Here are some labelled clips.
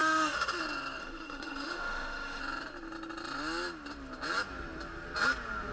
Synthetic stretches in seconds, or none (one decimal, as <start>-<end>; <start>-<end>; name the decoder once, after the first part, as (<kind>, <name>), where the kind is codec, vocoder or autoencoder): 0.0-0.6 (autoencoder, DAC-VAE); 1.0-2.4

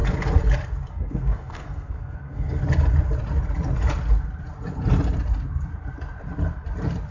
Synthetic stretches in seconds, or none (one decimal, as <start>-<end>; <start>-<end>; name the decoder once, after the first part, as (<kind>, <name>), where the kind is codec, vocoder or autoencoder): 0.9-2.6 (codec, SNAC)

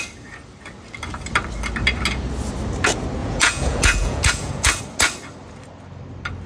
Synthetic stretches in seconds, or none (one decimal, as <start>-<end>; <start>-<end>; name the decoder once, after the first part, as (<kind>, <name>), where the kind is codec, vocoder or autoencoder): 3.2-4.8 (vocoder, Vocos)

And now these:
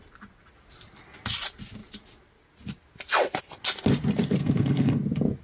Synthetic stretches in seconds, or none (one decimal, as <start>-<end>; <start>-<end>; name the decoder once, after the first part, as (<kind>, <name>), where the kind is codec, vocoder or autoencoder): 4.4-5.0 (codec, SNAC)

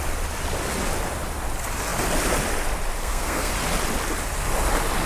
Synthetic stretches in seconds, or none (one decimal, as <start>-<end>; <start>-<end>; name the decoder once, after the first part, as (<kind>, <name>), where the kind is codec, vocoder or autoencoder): 3.0-3.5 (codec, SNAC)